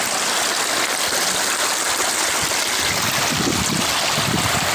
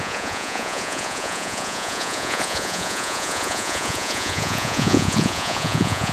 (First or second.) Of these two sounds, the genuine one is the first